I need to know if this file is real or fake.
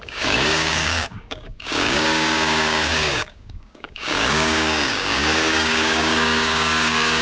fake